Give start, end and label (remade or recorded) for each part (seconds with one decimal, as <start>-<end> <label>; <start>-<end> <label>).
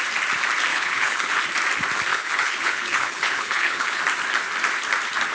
0.0-0.7 recorded; 0.7-1.4 remade; 1.4-2.1 recorded; 2.1-4.0 remade; 4.0-5.3 recorded